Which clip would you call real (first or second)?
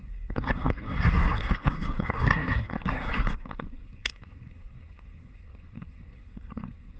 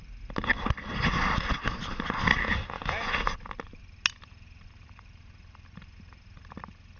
second